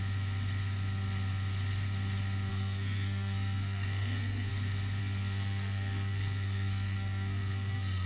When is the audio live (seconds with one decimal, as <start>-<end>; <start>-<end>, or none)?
0.0-2.5; 4.5-5.0